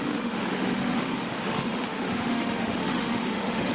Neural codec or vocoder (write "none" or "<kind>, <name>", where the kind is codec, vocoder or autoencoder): autoencoder, DAC-VAE